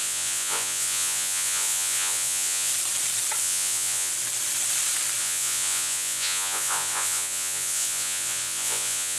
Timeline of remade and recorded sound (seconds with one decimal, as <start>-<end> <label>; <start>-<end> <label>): 0.0-2.7 remade; 2.7-3.4 recorded; 3.4-4.1 remade; 4.1-5.2 recorded; 5.2-9.2 remade